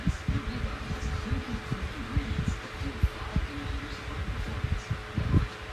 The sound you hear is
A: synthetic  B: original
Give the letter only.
B